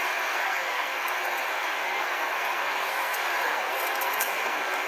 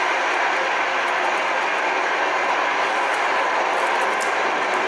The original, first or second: second